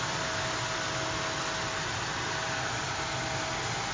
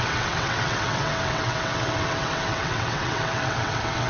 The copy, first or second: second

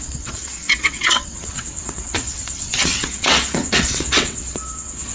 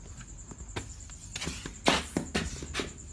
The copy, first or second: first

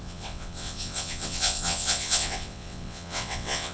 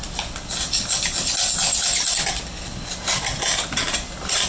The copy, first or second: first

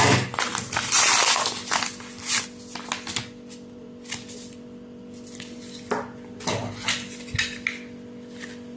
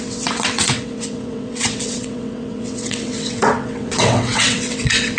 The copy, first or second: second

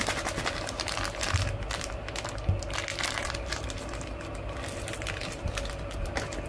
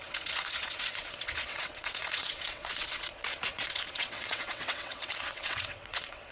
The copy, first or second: second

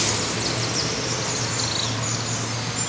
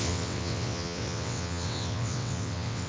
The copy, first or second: second